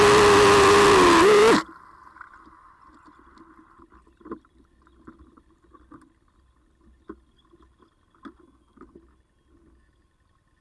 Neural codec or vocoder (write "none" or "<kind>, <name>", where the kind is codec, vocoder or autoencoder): none